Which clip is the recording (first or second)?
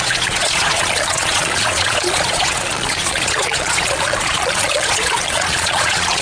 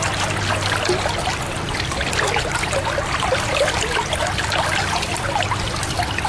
second